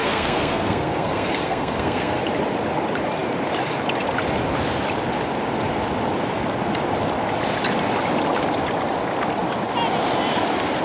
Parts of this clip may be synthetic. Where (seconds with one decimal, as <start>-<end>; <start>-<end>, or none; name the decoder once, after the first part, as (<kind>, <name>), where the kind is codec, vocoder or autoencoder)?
0.0-2.2 (codec, SNAC)